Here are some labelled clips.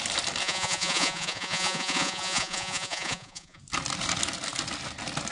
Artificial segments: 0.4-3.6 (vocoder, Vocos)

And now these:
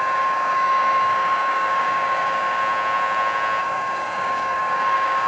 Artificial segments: 0.0-2.6 (codec, DAC); 3.6-5.3

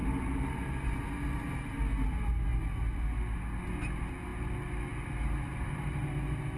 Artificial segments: 0.0-0.5 (vocoder, BigVGAN v2); 4.3-6.1

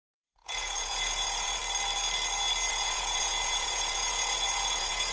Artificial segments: 0.0-1.6 (vocoder, Vocos); 2.7-5.1

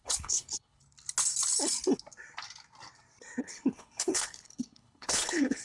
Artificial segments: 0.0-0.8 (codec, HILCodec); 3.4-5.6

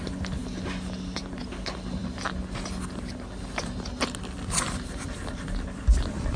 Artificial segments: none

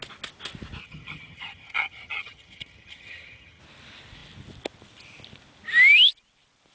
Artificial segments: 0.8-3.6 (vocoder, HiFi-GAN)

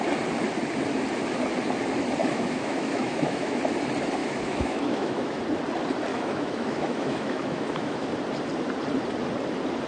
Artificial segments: 2.2-3.6 (autoencoder, DAC-VAE); 4.2-5.4; 6.1-8.1